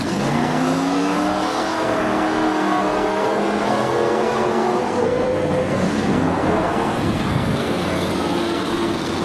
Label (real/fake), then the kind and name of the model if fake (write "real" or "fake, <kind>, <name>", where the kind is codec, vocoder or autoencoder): fake, codec, SNAC